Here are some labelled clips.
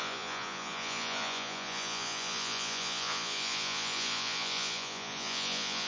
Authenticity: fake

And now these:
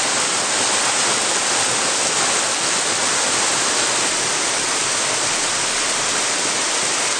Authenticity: real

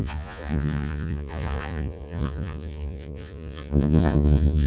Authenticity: fake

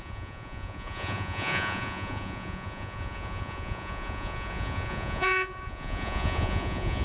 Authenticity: fake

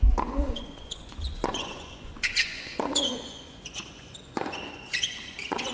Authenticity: fake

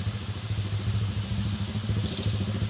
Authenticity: real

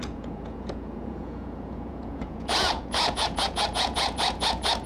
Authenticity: fake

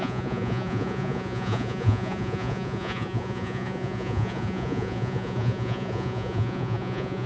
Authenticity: fake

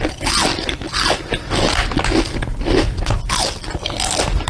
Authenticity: real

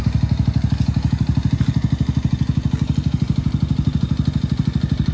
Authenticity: real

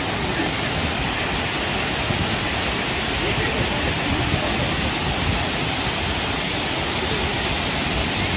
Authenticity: real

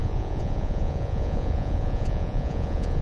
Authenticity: fake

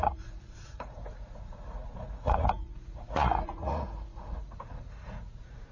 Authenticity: fake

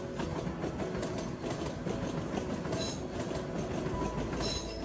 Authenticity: real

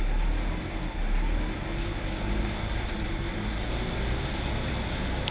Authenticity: real